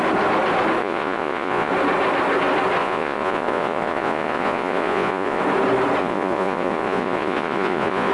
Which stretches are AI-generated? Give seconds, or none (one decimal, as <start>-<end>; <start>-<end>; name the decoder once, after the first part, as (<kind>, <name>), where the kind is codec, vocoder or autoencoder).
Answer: 0.8-1.7 (vocoder, Vocos); 2.8-5.4; 6.0-8.1